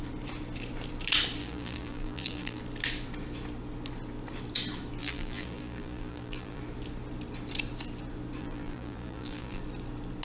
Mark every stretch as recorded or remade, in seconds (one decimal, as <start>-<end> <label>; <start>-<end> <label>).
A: 0.0-1.4 recorded; 1.4-2.6 remade; 2.6-5.0 recorded; 5.0-6.6 remade; 6.6-8.4 recorded; 8.4-9.6 remade; 9.6-10.2 recorded